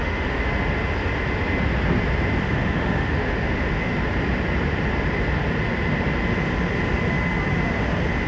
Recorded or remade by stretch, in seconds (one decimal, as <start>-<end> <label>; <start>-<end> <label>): 0.0-0.4 remade; 0.4-2.4 recorded; 2.4-3.9 remade; 3.9-8.3 recorded